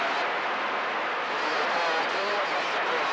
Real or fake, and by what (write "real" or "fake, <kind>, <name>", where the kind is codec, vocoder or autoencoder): real